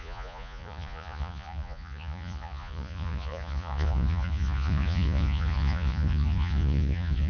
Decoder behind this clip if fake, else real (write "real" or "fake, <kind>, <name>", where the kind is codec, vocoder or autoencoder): fake, vocoder, Vocos